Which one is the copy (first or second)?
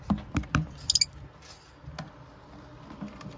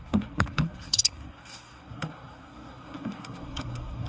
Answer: second